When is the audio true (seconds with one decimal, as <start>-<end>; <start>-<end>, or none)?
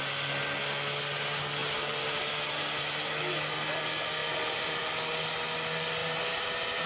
0.0-1.6; 3.1-4.2; 4.8-6.0